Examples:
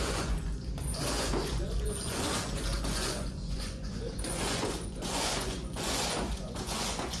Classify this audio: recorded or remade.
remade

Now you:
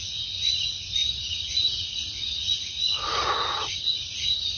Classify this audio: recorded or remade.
remade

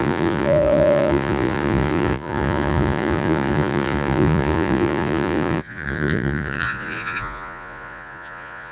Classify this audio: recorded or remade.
remade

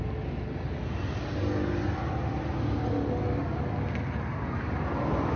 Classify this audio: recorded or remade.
recorded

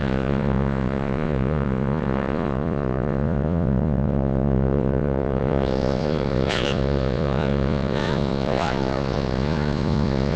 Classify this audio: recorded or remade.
remade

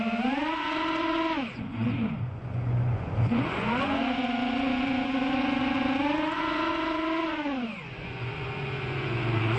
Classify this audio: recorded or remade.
remade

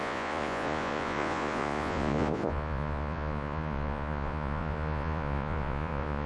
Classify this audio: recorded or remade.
remade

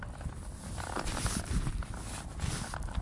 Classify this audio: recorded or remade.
recorded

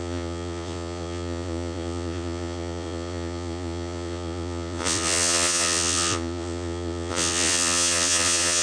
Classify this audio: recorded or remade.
remade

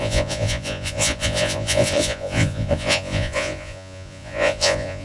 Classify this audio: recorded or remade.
remade